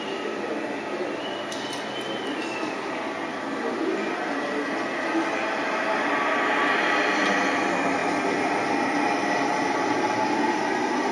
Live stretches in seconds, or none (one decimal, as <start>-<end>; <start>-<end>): 0.0-11.1